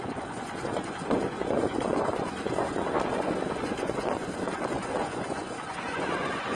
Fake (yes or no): yes